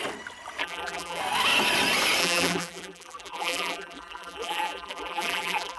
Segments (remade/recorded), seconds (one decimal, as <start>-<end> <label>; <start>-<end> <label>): 0.0-0.6 recorded; 0.6-1.2 remade; 1.2-2.2 recorded; 2.2-5.8 remade